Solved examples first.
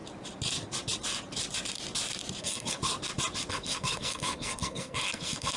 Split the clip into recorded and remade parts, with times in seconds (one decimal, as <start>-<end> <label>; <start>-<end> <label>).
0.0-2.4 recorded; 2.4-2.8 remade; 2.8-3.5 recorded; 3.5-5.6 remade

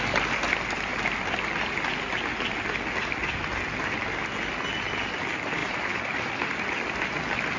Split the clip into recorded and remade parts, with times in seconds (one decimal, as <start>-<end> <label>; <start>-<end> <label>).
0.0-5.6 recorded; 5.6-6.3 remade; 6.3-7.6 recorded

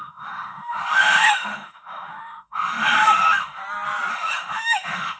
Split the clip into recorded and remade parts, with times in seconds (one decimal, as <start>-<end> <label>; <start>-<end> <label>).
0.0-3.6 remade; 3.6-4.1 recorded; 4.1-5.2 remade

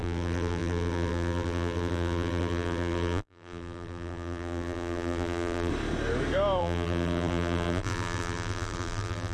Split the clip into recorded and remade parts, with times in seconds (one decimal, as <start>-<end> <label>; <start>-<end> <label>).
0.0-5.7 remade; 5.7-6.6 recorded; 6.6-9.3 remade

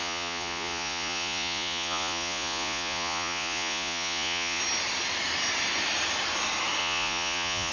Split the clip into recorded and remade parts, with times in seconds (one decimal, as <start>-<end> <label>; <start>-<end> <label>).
0.0-4.6 remade; 4.6-6.8 recorded; 6.8-7.7 remade

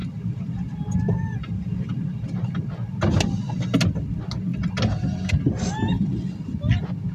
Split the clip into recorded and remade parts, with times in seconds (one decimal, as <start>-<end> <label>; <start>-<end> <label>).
0.0-7.1 recorded

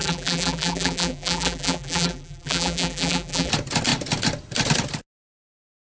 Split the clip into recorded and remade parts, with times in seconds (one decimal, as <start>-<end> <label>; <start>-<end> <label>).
0.0-3.5 remade; 3.5-5.8 recorded